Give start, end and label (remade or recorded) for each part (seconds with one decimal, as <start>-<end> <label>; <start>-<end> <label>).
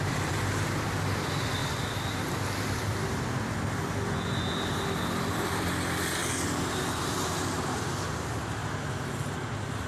0.0-1.6 remade; 1.6-4.6 recorded; 4.6-6.2 remade; 6.2-6.7 recorded; 6.7-8.6 remade; 8.6-9.5 recorded; 9.5-9.9 remade